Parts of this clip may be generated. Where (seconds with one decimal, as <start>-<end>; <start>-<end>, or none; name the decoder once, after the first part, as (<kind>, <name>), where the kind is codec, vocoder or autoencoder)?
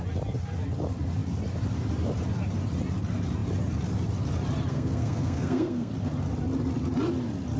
4.7-5.9 (codec, SNAC)